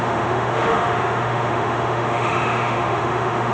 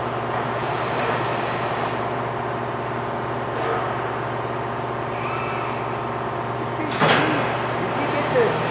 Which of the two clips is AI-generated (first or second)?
first